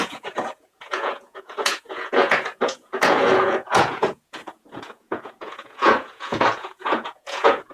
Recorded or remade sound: remade